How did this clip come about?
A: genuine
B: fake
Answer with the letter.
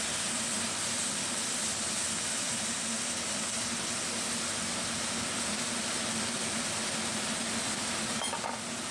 A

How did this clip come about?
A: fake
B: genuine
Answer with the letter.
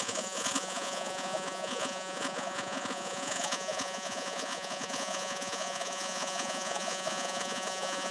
A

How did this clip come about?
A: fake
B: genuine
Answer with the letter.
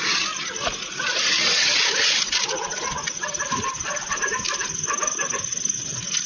B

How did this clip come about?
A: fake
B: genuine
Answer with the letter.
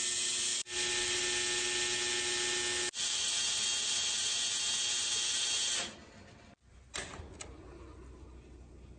B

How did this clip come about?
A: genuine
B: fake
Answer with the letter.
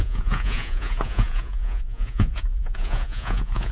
B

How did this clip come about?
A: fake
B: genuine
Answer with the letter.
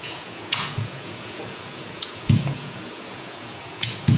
A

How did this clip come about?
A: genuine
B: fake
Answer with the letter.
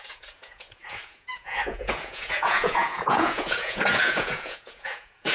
B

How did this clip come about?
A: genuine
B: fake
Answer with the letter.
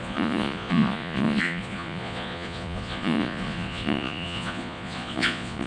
B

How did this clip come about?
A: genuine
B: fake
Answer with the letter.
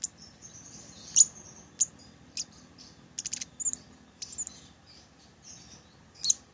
A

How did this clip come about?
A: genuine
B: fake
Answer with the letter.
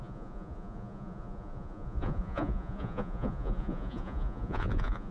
B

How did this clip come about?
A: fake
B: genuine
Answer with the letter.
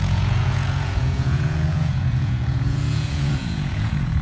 A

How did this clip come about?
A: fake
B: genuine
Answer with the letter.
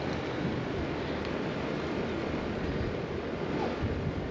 B